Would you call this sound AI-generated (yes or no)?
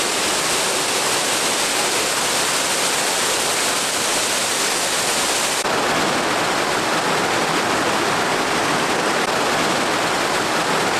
no